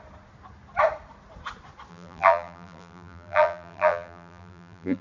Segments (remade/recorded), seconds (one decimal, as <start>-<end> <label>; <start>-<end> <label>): 0.0-1.9 recorded; 1.9-5.0 remade